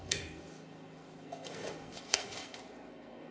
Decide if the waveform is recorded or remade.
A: remade